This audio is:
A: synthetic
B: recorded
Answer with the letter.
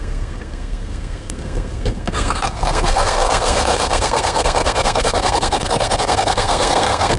A